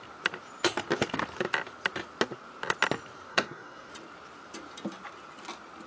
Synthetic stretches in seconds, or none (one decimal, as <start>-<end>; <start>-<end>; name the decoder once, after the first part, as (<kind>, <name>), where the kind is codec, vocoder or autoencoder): 3.3-3.9 (codec, SNAC)